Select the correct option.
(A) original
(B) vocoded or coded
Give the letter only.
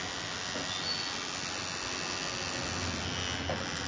A